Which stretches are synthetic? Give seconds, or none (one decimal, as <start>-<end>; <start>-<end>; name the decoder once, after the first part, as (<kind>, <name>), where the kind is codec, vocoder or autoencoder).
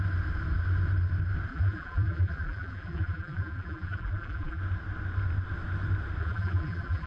1.5-4.6 (vocoder, BigVGAN v2); 6.2-7.1